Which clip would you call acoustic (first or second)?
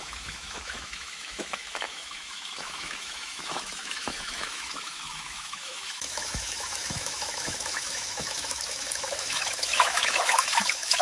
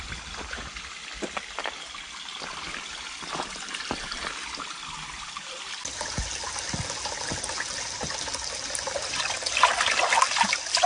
second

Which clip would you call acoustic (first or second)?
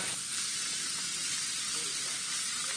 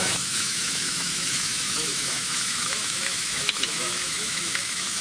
first